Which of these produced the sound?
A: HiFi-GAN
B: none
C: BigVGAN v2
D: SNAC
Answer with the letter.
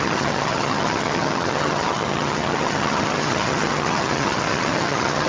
A